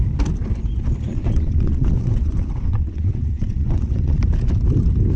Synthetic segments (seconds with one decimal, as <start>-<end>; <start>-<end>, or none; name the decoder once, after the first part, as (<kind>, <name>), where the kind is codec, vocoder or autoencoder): 1.1-4.2 (vocoder, WaveNeXt)